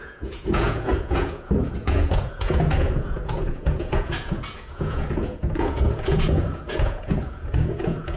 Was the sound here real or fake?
fake